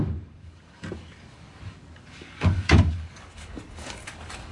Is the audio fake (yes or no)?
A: yes